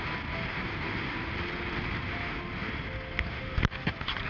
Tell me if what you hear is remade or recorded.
recorded